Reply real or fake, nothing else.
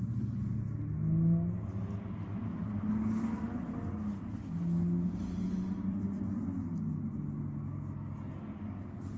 real